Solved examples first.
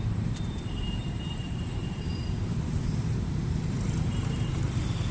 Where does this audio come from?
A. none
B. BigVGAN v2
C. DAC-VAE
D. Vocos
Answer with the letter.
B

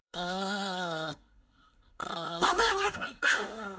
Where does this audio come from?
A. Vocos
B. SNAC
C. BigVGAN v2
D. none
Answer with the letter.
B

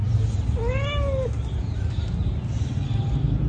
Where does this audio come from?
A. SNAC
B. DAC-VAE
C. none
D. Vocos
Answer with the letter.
C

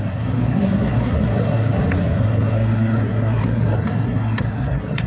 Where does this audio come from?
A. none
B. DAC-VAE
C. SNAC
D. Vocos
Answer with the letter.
C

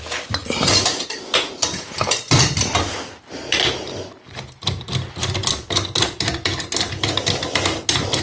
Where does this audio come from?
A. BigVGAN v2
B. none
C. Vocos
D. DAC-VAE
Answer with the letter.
B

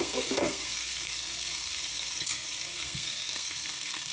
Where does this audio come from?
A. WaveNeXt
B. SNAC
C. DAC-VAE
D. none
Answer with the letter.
B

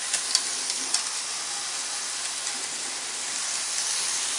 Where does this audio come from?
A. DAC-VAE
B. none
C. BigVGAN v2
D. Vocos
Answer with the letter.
B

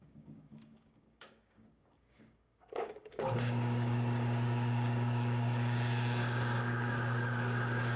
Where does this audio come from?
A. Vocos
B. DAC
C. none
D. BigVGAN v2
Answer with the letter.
B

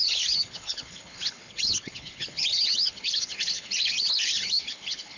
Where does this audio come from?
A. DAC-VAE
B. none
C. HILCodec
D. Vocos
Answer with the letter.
C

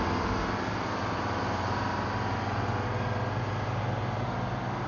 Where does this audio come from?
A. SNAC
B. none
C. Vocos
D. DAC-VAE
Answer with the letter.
B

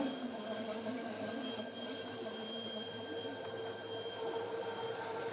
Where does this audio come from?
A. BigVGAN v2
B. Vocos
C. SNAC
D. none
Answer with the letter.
D